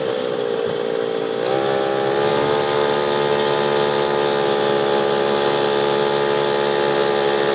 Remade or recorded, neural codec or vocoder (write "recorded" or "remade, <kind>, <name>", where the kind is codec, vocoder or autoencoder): recorded